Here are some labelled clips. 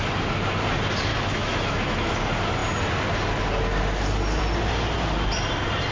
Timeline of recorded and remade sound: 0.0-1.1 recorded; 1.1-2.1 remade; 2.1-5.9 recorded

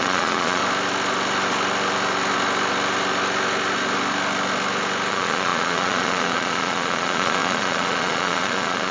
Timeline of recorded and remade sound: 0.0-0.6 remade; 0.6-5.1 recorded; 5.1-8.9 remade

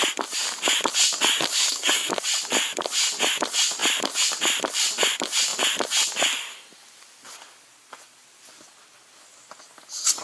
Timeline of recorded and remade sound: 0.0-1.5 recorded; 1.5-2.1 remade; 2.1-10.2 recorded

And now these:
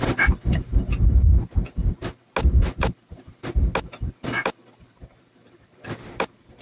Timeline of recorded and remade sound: 0.0-0.7 remade; 0.7-4.0 recorded; 4.0-6.6 remade

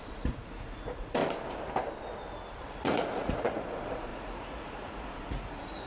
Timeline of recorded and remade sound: 0.0-1.2 remade; 1.2-2.6 recorded; 2.6-5.9 remade